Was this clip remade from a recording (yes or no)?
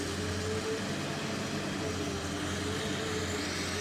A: no